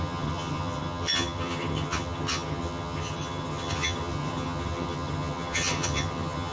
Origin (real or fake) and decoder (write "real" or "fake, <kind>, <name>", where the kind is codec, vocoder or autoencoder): fake, vocoder, HiFi-GAN